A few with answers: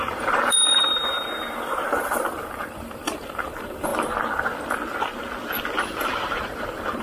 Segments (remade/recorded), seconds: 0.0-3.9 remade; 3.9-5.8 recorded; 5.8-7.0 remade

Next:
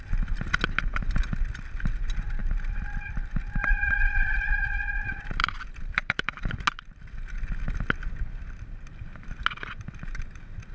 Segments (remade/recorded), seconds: 0.0-5.4 recorded; 5.4-6.5 remade; 6.5-10.7 recorded

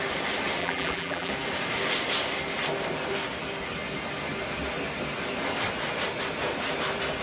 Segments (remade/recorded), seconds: 0.0-0.6 recorded; 0.6-1.3 remade; 1.3-7.2 recorded

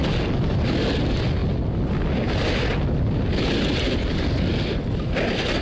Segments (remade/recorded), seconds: 0.0-5.6 recorded

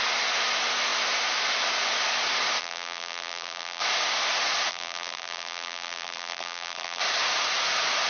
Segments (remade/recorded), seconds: 0.0-2.6 recorded; 2.6-3.8 remade; 3.8-4.7 recorded; 4.7-7.0 remade; 7.0-8.1 recorded

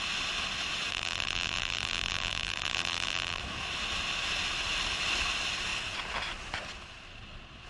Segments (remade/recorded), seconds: 0.0-0.9 recorded; 0.9-3.4 remade; 3.4-7.7 recorded